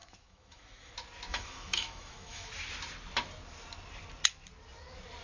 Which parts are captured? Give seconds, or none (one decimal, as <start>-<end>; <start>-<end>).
0.9-1.3; 2.5-5.2